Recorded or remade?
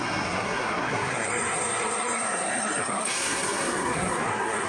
remade